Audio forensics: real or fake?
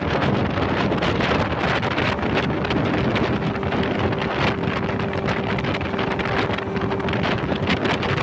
real